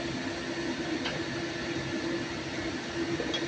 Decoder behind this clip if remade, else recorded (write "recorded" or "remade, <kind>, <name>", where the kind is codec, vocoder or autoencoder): recorded